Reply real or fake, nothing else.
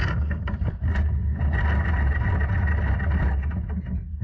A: real